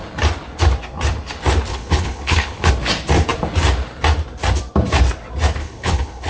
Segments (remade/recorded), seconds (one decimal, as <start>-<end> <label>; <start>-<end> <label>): 0.0-1.7 recorded; 1.7-2.7 remade; 2.7-5.6 recorded; 5.6-6.3 remade